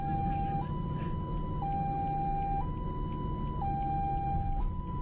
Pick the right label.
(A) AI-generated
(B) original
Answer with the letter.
B